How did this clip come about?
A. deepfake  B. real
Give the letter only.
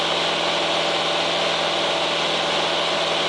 B